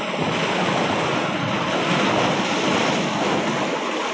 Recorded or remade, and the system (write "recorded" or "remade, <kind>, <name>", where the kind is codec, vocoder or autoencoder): recorded